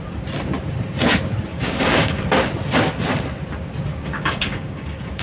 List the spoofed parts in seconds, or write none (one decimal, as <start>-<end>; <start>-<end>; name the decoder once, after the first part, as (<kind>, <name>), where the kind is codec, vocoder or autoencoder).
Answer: 1.5-2.2 (codec, DAC); 3.9-5.2